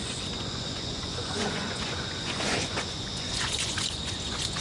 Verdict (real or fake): fake